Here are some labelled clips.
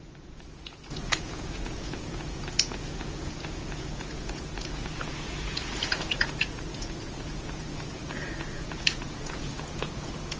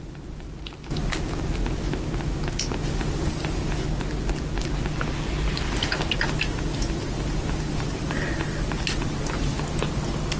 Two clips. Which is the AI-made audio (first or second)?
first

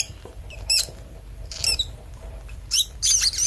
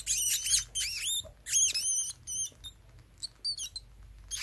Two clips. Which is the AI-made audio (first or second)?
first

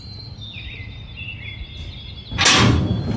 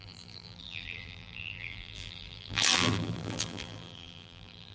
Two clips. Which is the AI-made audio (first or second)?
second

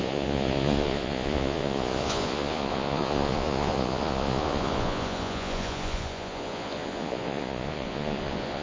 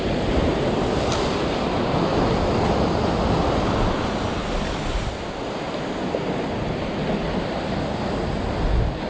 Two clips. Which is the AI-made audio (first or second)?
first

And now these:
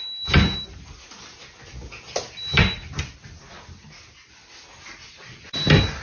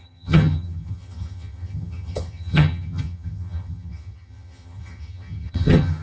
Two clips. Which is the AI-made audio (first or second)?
second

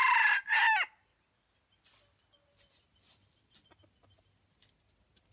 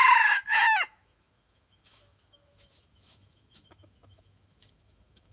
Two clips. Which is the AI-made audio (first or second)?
second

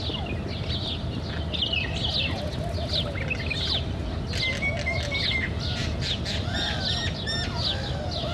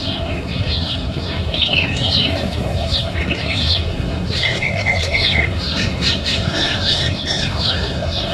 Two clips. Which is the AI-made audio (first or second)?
second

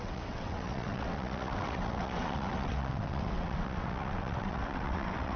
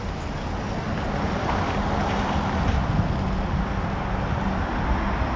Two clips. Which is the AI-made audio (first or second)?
first